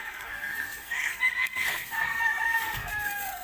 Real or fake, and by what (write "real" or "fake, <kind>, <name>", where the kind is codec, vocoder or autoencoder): fake, codec, SNAC